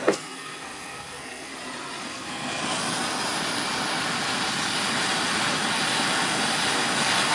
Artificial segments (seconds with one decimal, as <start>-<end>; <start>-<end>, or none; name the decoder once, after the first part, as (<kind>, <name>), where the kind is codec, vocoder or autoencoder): 0.0-1.5 (codec, SNAC); 2.0-2.6